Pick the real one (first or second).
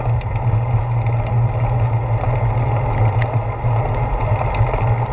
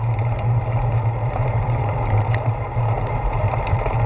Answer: first